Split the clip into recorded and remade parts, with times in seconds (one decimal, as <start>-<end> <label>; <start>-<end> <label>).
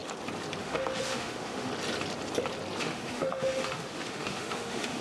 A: 0.0-0.6 recorded; 0.6-1.7 remade; 1.7-2.8 recorded; 2.8-5.0 remade